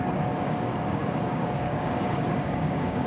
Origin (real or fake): fake